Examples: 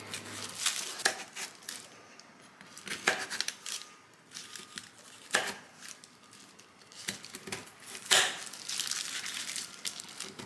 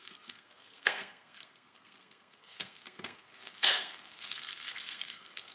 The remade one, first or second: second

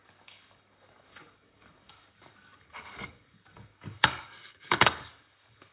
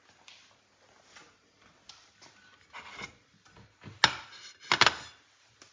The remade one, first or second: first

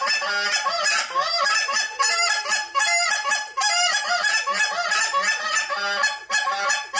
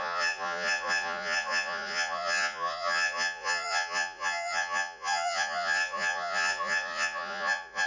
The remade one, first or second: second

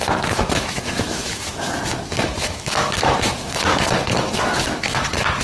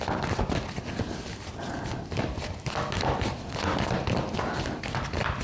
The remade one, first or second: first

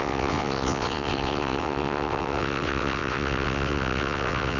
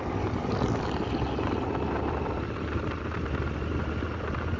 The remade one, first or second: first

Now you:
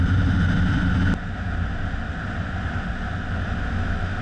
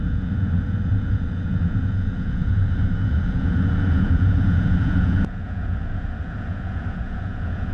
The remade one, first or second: second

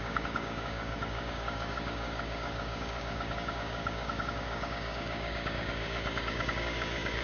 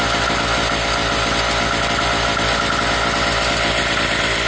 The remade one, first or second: first